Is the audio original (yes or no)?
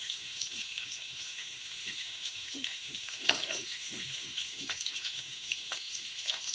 no